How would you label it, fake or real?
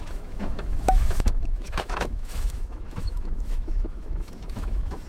fake